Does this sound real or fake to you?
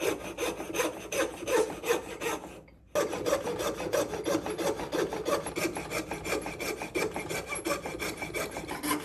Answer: real